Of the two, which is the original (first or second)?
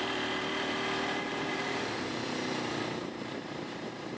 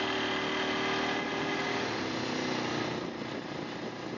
second